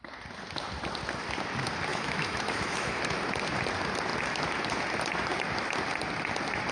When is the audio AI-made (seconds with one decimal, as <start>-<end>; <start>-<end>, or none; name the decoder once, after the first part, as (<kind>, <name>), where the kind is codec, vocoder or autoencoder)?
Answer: 1.9-3.0 (autoencoder, DAC-VAE)